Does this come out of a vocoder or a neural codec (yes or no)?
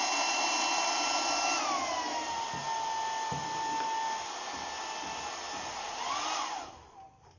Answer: no